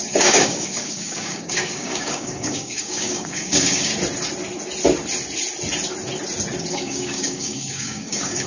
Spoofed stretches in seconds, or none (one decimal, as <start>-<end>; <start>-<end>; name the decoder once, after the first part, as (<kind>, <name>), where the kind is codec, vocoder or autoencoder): 0.0-3.9 (codec, DAC); 6.7-8.5